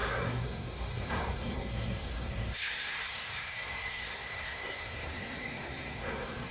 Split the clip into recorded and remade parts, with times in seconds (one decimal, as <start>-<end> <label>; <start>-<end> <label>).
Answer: 0.0-6.5 remade

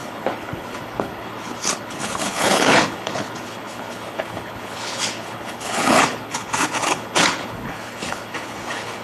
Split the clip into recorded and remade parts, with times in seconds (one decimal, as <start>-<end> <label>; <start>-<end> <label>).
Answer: 0.0-9.0 remade

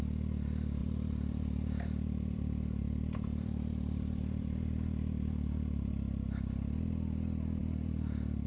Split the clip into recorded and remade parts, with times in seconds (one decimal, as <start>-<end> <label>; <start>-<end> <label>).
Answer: 0.0-0.8 recorded; 0.8-5.9 remade; 5.9-7.6 recorded; 7.6-8.5 remade

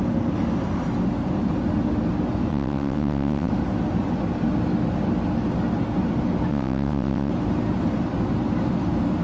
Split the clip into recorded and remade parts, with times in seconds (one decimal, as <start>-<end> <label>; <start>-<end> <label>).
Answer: 0.0-2.5 recorded; 2.5-3.5 remade; 3.5-6.5 recorded; 6.5-7.3 remade; 7.3-9.2 recorded

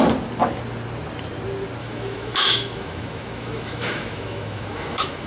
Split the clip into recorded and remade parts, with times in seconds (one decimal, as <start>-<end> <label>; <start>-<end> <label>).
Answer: 0.0-1.8 recorded; 1.8-5.3 remade

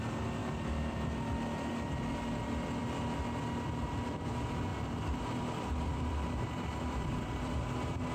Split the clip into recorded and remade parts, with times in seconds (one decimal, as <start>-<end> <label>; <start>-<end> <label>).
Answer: 0.0-0.4 recorded; 0.4-1.7 remade; 1.7-4.7 recorded; 4.7-7.5 remade; 7.5-8.1 recorded

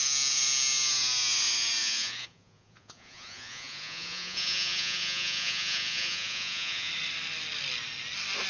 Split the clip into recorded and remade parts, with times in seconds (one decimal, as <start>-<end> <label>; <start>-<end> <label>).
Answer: 0.0-1.8 recorded; 1.8-6.9 remade; 6.9-8.5 recorded